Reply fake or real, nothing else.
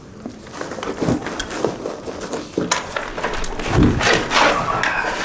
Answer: real